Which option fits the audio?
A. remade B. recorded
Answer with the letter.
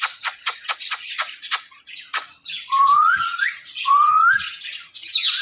A